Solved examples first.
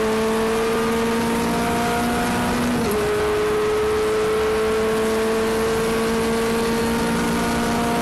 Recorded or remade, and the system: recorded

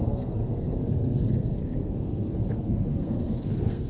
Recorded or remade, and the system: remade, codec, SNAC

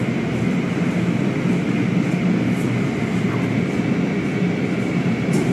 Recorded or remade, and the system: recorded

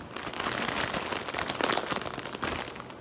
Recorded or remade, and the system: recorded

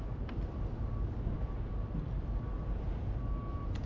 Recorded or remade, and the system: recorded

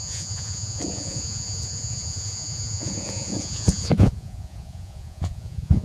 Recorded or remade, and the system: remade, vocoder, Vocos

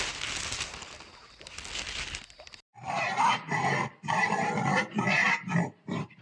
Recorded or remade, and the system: recorded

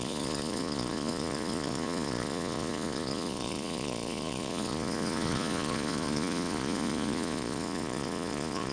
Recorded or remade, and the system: remade, vocoder, Vocos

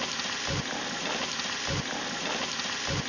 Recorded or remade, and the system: recorded